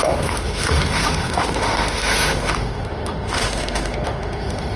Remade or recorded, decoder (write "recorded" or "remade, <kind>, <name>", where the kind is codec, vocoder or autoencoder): remade, autoencoder, DAC-VAE